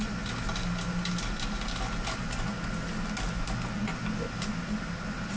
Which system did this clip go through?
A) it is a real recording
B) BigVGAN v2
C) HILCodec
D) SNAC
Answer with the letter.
A